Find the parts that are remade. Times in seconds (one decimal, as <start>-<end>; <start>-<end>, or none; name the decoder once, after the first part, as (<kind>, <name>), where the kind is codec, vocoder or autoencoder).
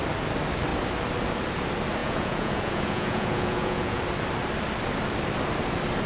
2.0-4.0 (vocoder, Vocos)